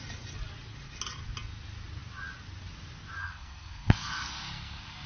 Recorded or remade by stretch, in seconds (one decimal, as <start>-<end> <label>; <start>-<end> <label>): 0.0-3.2 recorded; 3.2-5.1 remade